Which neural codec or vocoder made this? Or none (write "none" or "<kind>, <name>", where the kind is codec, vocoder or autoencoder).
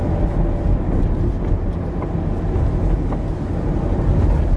none